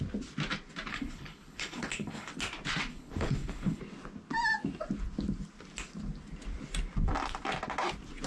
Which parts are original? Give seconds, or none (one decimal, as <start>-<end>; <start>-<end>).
0.0-0.9; 2.3-2.9; 3.8-8.3

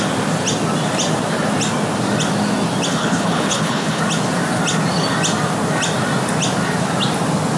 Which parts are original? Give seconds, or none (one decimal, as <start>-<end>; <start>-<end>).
0.0-2.9; 4.0-7.6